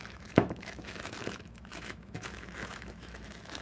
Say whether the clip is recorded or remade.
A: remade